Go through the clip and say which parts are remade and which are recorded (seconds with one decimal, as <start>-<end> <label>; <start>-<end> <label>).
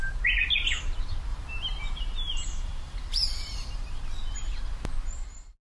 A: 0.0-1.3 recorded; 1.3-4.0 remade; 4.0-5.6 recorded